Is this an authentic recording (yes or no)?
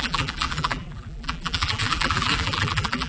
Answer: no